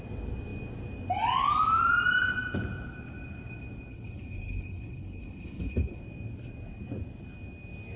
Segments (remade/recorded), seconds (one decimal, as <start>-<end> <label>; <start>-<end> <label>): 0.0-3.9 recorded; 3.9-6.0 remade; 6.0-8.0 recorded

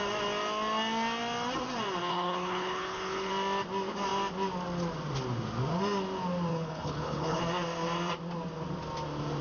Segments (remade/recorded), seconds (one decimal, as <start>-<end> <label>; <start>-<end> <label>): 0.0-2.1 recorded; 2.1-3.3 remade; 3.3-6.5 recorded; 6.5-7.4 remade; 7.4-9.4 recorded

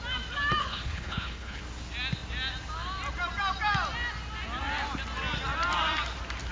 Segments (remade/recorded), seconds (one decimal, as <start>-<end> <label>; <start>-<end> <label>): 0.0-0.6 recorded; 0.6-1.6 remade; 1.6-6.5 recorded

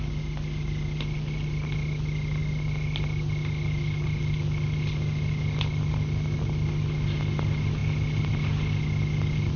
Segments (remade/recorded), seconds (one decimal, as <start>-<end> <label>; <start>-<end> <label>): 0.0-9.6 recorded

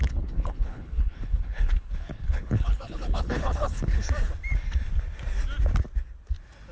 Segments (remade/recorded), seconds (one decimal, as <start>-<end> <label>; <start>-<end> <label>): 0.0-4.0 remade; 4.0-6.7 recorded

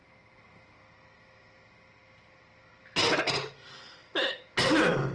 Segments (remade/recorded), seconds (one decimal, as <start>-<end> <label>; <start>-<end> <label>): 0.0-5.1 recorded

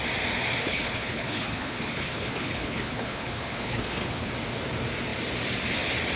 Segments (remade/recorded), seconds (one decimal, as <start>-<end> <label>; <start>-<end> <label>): 0.0-0.6 recorded; 0.6-4.3 remade; 4.3-6.2 recorded